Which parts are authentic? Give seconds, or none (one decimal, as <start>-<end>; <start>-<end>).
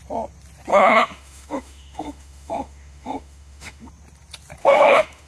0.0-0.7; 3.9-4.6